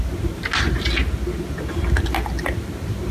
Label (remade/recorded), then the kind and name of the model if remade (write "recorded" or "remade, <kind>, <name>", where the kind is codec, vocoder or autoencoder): recorded